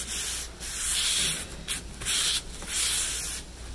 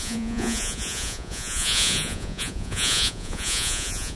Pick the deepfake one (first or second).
second